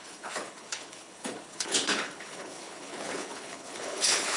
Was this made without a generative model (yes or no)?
no